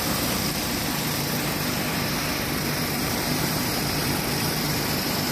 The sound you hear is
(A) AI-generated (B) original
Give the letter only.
A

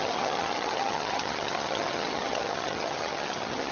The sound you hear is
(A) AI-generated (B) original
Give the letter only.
A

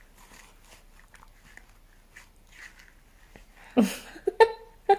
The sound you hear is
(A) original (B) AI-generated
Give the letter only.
A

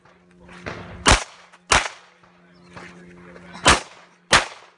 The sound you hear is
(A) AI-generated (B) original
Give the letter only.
B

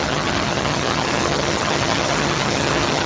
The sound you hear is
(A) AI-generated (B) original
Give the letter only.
A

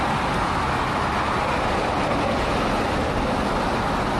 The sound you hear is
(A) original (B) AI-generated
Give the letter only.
A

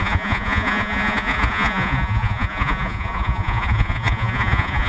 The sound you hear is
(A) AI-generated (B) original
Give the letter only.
A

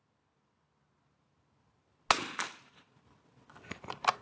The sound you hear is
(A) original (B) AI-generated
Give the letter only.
A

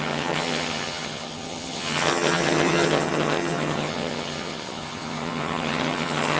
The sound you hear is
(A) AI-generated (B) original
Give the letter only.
A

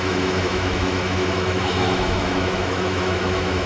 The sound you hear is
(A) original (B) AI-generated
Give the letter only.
B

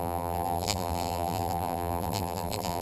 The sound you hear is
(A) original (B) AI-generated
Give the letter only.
B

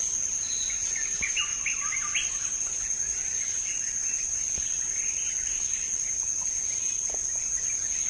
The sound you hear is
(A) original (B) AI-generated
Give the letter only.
A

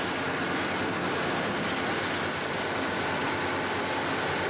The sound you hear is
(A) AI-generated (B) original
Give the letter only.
B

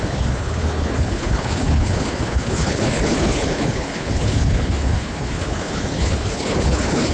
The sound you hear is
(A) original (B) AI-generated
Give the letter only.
B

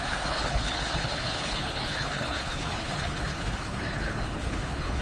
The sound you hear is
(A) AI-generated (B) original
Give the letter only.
A